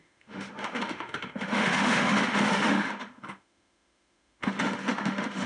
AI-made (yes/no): yes